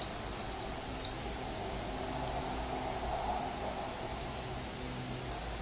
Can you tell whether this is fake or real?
real